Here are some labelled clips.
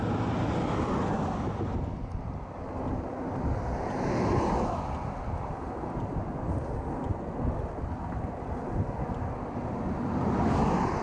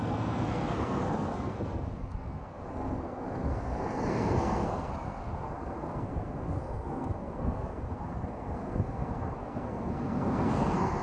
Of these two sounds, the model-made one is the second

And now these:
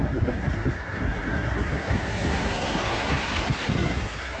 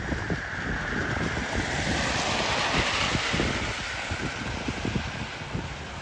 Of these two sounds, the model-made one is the first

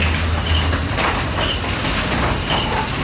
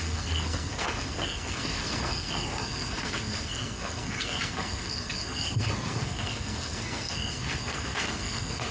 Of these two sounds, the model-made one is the second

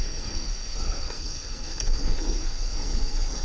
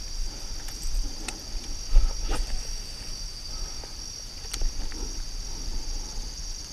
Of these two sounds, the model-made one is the first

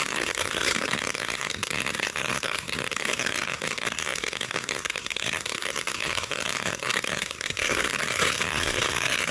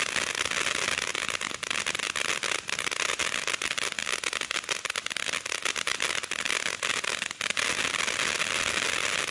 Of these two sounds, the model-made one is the first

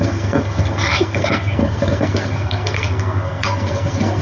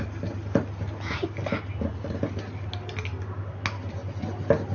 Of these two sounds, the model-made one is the first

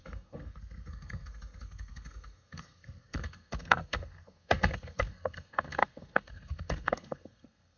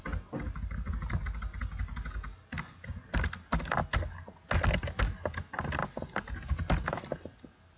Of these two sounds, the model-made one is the first